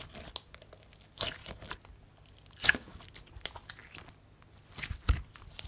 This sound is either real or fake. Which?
real